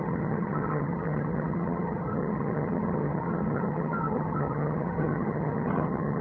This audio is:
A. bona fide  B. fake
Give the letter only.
B